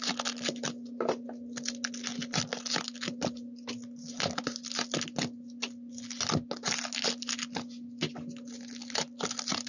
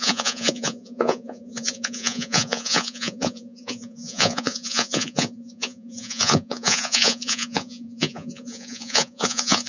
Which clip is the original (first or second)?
first